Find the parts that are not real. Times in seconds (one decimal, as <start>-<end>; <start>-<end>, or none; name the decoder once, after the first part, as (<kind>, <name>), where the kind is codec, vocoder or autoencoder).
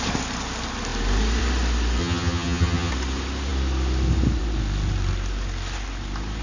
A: 2.0-2.9 (vocoder, HiFi-GAN)